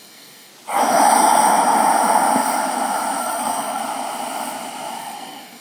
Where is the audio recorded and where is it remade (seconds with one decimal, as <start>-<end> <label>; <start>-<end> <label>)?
0.0-0.5 remade; 0.5-3.2 recorded; 3.2-3.8 remade; 3.8-5.0 recorded; 5.0-5.6 remade